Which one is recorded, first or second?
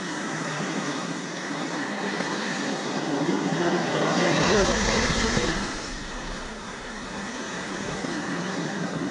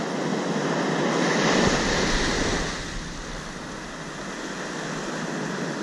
second